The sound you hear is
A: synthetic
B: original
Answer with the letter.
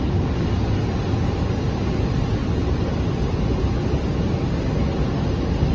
B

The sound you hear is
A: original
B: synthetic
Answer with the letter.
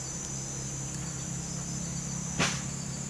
A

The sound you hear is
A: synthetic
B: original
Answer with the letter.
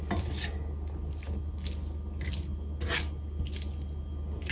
B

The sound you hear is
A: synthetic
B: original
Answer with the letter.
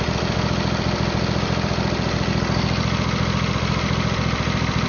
B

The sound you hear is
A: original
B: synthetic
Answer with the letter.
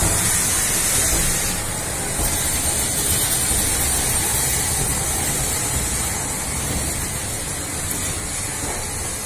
A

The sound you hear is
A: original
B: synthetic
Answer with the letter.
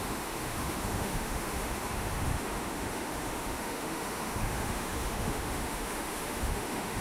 B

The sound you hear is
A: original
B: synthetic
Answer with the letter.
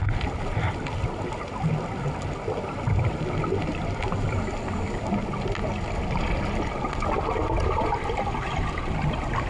A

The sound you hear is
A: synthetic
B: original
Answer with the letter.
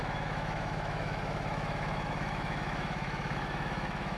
A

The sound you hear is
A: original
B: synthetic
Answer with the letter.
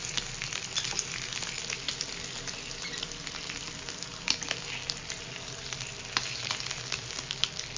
A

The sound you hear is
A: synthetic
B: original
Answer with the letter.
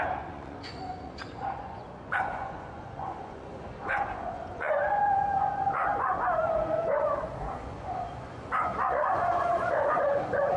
A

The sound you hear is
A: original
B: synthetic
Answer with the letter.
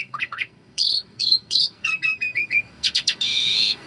B